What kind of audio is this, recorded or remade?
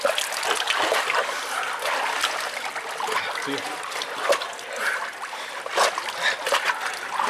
recorded